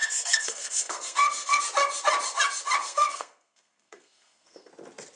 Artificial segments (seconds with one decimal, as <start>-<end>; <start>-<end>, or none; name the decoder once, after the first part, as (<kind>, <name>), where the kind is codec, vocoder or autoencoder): 0.0-1.6 (codec, SNAC); 2.8-4.7